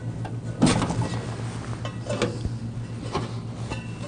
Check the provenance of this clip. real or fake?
real